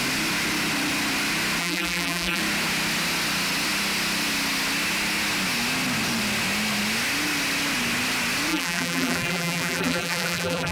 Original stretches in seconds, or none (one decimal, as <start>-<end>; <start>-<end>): 0.0-1.6; 2.4-8.5